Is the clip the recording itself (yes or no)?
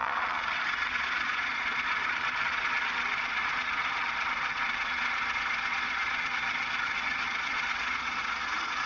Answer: no